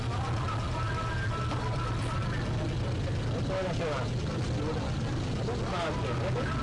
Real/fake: real